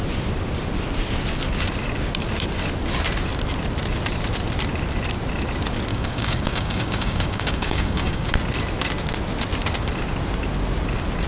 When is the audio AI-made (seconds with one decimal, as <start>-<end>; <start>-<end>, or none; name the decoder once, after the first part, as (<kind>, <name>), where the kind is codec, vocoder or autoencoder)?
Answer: 5.9-8.3 (codec, DAC)